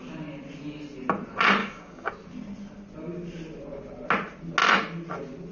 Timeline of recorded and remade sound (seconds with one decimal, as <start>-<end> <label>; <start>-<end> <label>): 0.0-1.6 recorded; 1.6-2.1 remade; 2.1-5.5 recorded